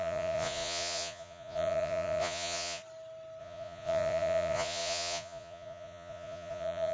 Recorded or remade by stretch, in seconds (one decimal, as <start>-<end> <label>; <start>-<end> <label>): 0.0-2.8 remade; 2.8-3.4 recorded; 3.4-6.9 remade